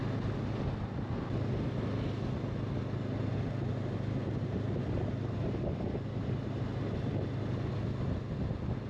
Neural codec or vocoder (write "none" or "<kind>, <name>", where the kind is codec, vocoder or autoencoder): none